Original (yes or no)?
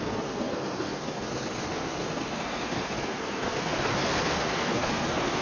no